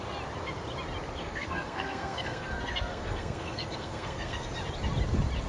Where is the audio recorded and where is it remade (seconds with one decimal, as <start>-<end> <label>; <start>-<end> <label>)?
0.0-1.2 recorded; 1.2-4.5 remade; 4.5-5.5 recorded